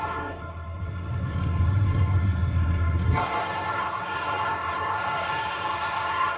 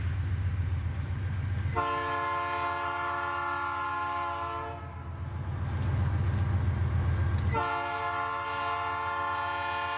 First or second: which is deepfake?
first